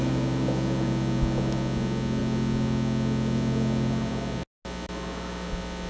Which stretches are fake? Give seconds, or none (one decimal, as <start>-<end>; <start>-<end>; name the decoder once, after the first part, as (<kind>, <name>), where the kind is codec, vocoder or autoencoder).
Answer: none